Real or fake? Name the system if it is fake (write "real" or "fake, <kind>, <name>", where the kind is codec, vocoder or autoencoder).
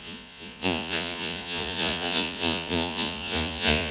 fake, vocoder, Vocos